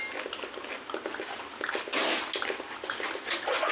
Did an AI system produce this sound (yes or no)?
no